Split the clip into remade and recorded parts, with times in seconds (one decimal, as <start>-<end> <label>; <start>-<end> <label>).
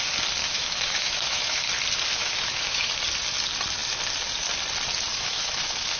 0.0-0.4 recorded; 0.4-1.7 remade; 1.7-2.2 recorded; 2.2-2.9 remade; 2.9-5.1 recorded; 5.1-6.0 remade